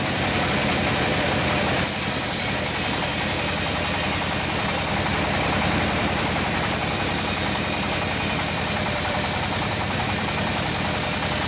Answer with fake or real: fake